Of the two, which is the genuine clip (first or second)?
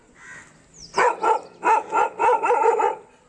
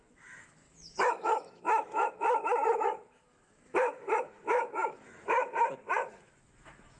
first